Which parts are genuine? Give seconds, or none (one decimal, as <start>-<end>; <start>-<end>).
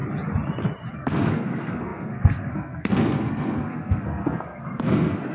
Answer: 0.0-0.9